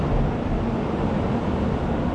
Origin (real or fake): real